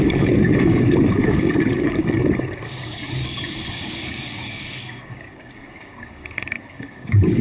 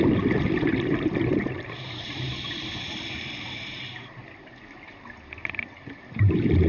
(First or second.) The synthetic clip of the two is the first